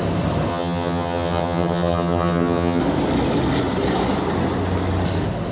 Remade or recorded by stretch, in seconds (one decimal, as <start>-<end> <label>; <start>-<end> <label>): 0.0-0.5 recorded; 0.5-2.8 remade; 2.8-5.5 recorded